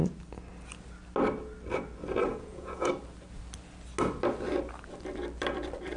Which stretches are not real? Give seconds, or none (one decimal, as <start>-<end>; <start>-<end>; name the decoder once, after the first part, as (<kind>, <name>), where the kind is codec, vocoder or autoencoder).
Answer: 2.3-2.9 (vocoder, Vocos)